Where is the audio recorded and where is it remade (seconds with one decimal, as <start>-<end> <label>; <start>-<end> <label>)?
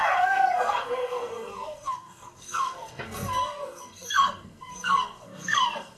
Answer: 0.0-6.0 remade